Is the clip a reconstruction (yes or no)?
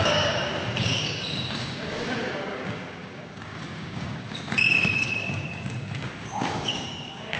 yes